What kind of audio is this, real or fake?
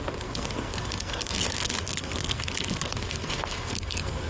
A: fake